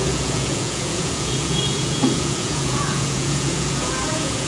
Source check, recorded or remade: remade